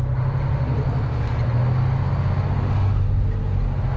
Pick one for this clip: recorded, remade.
recorded